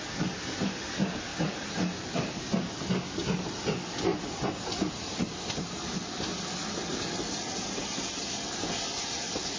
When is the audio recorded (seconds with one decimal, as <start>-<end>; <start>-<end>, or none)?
0.0-9.6